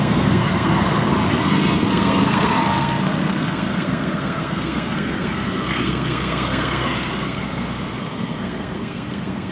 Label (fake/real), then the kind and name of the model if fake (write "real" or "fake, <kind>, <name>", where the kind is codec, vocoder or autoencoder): fake, codec, SNAC